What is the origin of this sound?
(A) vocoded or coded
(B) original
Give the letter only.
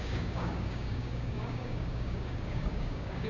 A